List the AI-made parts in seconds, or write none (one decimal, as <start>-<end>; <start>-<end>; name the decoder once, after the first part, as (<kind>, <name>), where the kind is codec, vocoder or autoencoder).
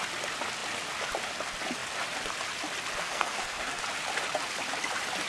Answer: 3.0-3.8 (codec, SNAC)